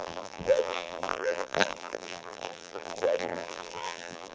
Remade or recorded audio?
remade